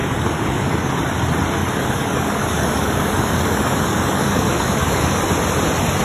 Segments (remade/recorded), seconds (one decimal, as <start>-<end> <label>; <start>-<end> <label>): 0.0-0.9 remade; 0.9-1.6 recorded; 1.6-5.2 remade; 5.2-6.0 recorded